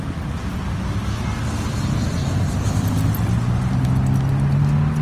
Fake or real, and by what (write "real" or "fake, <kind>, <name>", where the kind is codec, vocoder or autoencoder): real